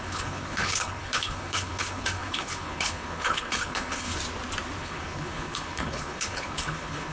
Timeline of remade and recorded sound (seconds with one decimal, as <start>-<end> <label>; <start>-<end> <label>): 0.0-4.2 remade; 4.2-4.8 recorded; 4.8-7.1 remade